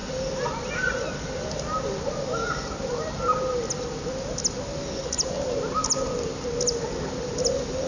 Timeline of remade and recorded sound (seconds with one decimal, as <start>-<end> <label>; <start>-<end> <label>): 0.0-7.9 recorded